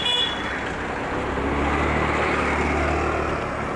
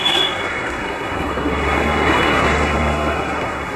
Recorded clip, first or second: first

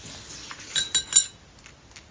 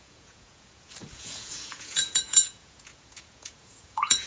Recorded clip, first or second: first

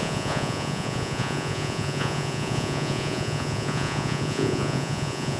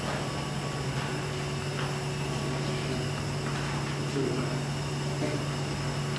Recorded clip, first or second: second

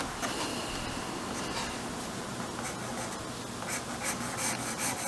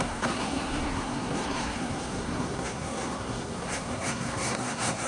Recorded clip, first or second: first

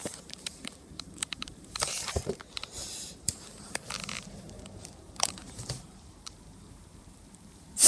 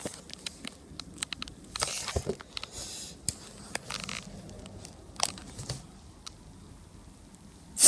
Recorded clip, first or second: second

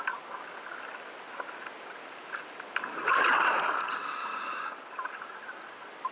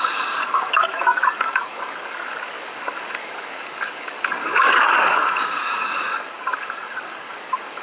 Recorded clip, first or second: first